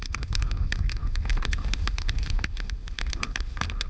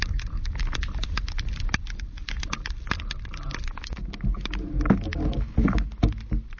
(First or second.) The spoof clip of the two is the first